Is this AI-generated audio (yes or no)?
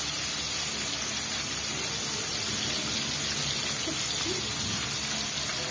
no